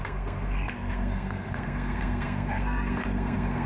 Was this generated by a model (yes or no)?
yes